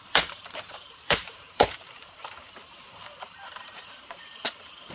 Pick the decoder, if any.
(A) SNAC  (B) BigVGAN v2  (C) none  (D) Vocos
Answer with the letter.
B